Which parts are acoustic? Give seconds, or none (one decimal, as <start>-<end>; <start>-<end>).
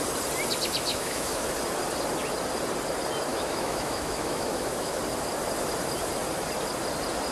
0.0-0.9; 1.4-3.3; 5.0-7.3